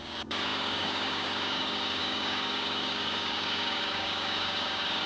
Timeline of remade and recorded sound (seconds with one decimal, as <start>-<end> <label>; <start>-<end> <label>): 0.0-5.1 remade